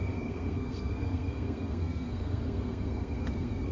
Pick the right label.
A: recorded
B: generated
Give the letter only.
B